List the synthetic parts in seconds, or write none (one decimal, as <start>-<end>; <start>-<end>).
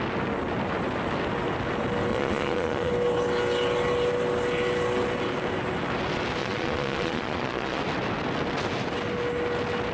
2.1-2.9; 6.4-7.8